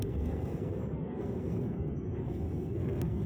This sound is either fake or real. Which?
fake